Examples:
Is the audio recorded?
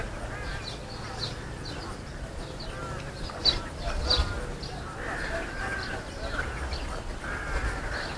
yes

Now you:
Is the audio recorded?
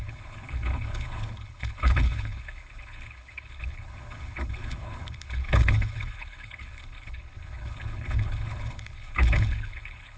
no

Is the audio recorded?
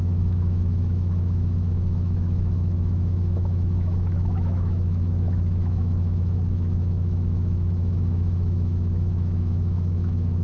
no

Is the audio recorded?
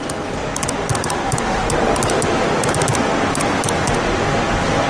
yes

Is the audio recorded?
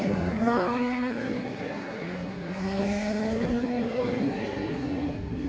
no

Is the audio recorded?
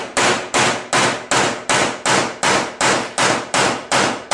yes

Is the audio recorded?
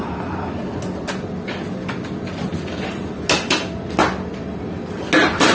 yes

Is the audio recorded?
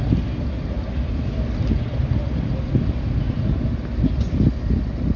yes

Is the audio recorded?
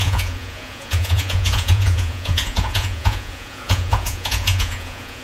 no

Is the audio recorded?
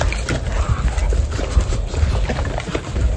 yes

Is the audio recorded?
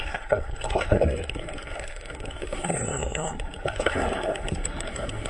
no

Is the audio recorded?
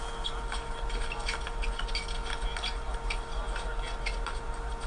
yes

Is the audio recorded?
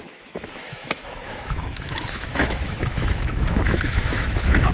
no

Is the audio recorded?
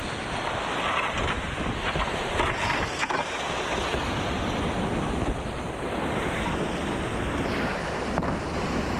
yes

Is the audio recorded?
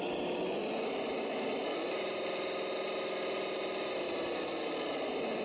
yes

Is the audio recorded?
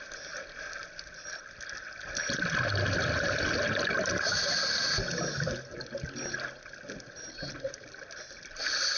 yes